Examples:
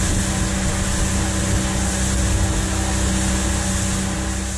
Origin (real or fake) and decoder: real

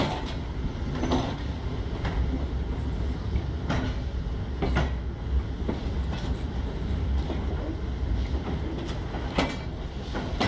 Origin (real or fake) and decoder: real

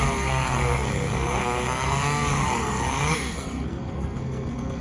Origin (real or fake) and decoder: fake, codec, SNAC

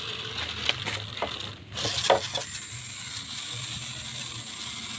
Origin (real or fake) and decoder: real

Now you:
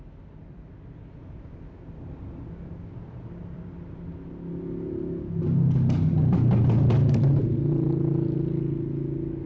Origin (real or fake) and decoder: real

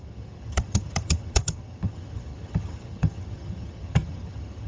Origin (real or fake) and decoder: fake, vocoder, HiFi-GAN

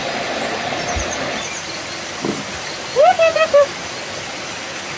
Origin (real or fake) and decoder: real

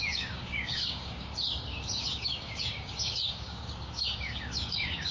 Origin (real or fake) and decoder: fake, codec, DAC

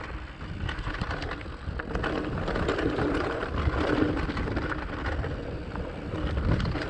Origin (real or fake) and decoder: real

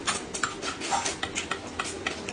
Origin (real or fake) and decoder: real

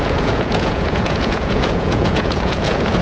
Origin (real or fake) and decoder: fake, vocoder, Vocos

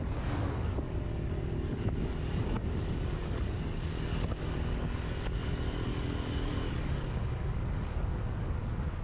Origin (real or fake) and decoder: fake, codec, DAC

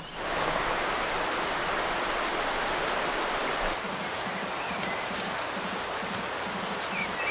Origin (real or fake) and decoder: real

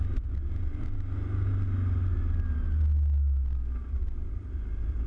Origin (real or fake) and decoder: real